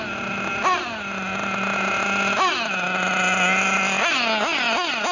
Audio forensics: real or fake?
real